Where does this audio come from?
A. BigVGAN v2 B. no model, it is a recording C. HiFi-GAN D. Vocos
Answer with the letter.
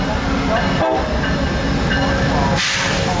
B